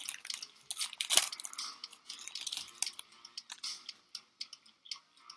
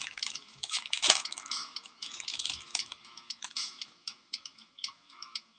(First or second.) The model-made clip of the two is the second